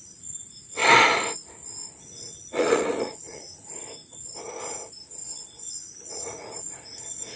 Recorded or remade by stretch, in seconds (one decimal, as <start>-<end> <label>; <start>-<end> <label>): 0.0-0.8 remade; 0.8-2.0 recorded; 2.0-4.0 remade; 4.0-5.7 recorded; 5.7-7.4 remade